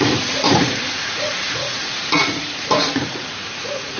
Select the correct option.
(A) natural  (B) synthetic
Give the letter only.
B